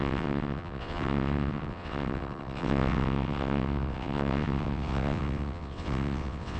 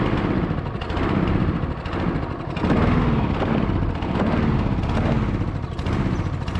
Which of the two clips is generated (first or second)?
first